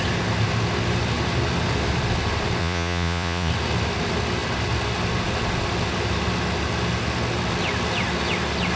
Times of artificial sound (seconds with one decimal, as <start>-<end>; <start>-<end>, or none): 2.6-3.5